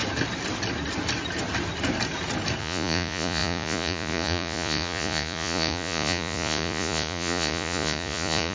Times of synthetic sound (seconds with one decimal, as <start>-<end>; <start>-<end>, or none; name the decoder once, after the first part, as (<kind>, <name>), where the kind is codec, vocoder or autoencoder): 2.6-8.5 (vocoder, Vocos)